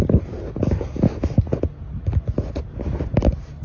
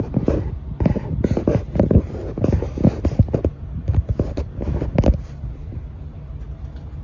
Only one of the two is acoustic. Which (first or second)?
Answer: first